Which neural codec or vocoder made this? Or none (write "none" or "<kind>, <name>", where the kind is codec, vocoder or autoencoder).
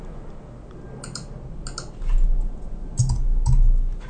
none